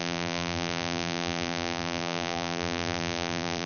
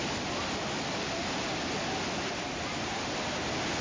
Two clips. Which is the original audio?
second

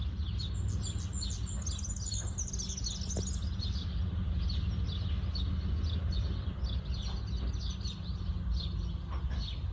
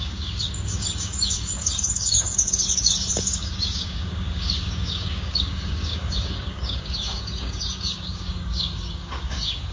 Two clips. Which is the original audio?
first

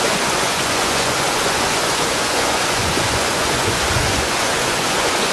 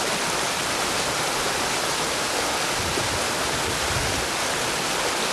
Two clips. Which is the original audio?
second